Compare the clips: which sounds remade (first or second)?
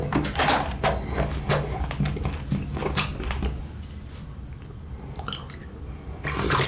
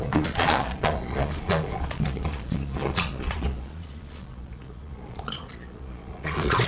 second